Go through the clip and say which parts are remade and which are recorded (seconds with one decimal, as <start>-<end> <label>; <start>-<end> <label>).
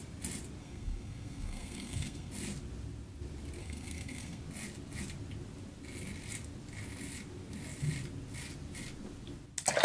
0.0-0.6 recorded; 0.6-2.3 remade; 2.3-3.6 recorded; 3.6-4.4 remade; 4.4-9.8 recorded